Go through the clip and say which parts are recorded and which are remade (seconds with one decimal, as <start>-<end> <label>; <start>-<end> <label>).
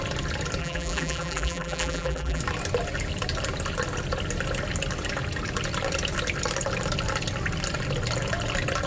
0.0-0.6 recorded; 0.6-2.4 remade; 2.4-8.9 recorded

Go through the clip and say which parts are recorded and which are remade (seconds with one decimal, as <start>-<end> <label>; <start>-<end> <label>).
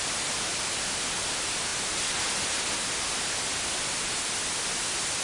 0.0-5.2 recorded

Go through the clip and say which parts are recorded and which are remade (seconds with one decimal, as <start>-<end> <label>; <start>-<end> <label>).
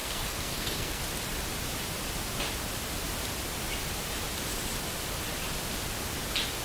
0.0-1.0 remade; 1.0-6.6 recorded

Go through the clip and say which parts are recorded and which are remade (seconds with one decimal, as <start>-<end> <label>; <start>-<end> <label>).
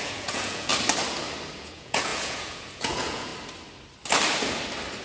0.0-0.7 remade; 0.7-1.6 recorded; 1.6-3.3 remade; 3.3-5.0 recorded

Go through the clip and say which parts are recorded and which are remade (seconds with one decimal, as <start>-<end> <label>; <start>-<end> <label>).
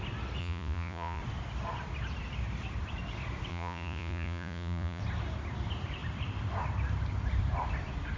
0.0-0.4 recorded; 0.4-1.2 remade; 1.2-3.5 recorded; 3.5-5.0 remade; 5.0-8.2 recorded